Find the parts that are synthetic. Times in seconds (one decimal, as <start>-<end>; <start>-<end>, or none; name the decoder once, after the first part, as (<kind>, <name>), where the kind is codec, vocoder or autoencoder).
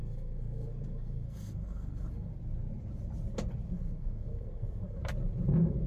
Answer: 0.0-2.3 (codec, SNAC); 3.7-5.0; 5.5-5.9